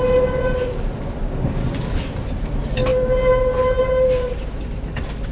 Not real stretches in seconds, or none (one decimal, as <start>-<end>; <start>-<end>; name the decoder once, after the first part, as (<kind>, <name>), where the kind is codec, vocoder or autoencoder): 1.2-1.7 (codec, DAC)